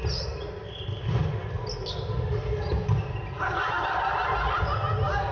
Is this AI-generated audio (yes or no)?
no